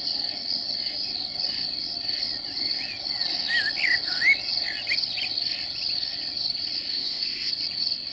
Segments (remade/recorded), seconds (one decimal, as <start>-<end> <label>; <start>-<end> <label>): 0.0-6.9 recorded; 6.9-7.5 remade; 7.5-8.1 recorded